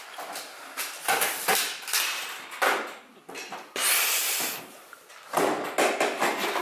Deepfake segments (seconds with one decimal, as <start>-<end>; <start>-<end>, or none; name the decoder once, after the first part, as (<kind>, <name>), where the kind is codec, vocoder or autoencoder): 4.2-5.1 (vocoder, BigVGAN v2)